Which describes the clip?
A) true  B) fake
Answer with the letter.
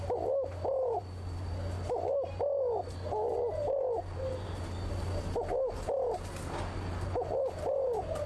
A